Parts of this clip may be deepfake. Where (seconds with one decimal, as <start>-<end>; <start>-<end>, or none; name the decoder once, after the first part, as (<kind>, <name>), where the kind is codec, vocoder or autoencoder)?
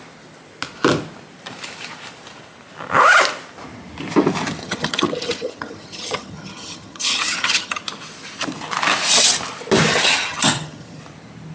4.6-7.8 (vocoder, HiFi-GAN); 9.9-11.0